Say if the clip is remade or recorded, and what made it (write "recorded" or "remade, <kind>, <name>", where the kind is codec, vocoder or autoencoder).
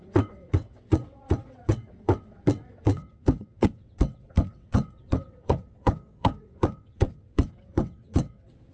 remade, vocoder, WaveNeXt